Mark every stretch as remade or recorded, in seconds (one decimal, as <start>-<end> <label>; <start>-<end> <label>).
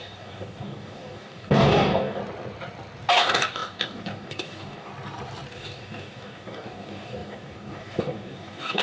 0.0-2.2 remade; 2.2-3.1 recorded; 3.1-4.9 remade; 4.9-5.5 recorded; 5.5-8.8 remade